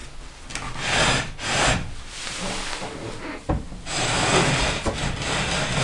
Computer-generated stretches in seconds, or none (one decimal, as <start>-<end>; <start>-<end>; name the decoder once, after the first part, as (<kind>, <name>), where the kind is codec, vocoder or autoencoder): none